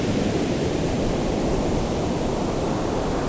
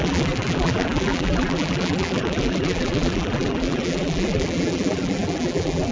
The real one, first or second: first